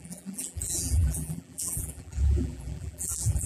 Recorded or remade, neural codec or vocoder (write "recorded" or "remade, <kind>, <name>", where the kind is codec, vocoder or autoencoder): remade, vocoder, BigVGAN v2